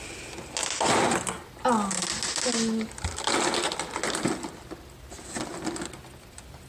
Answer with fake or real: real